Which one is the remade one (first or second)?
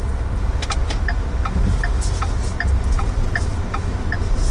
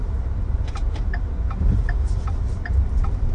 second